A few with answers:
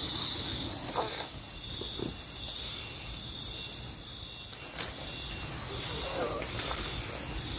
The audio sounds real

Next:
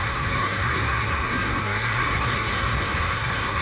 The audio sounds fake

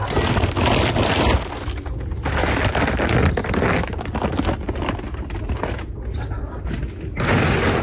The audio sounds real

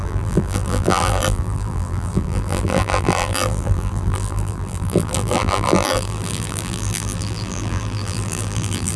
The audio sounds fake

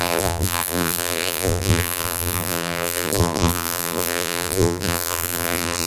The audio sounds fake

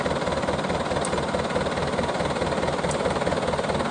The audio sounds real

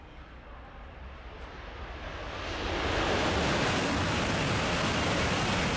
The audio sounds real